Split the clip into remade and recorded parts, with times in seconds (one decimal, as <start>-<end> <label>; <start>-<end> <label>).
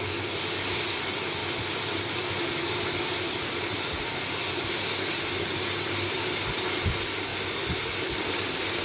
0.0-7.3 recorded; 7.3-7.9 remade; 7.9-8.8 recorded